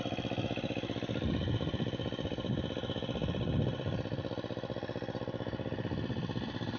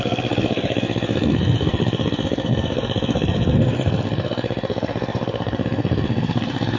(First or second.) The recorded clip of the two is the first